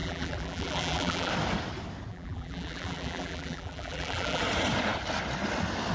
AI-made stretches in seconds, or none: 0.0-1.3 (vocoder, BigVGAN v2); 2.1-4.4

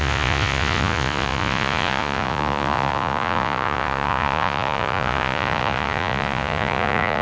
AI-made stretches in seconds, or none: 0.0-7.2 (vocoder, Vocos)

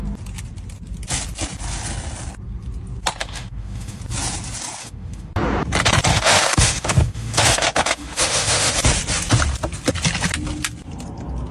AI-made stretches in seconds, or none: 3.2-4.0 (autoencoder, DAC-VAE); 4.8-5.3; 6.1-8.7

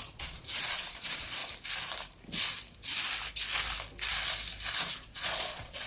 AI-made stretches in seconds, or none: 0.0-1.4 (vocoder, Vocos); 4.9-5.9